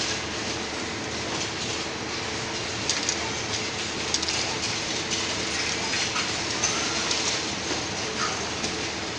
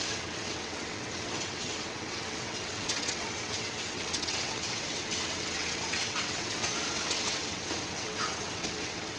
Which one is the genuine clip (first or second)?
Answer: first